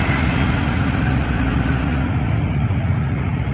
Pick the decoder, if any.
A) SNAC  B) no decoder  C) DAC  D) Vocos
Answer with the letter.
D